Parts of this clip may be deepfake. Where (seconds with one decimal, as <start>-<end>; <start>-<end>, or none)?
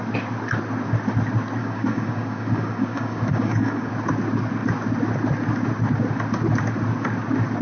1.6-3.9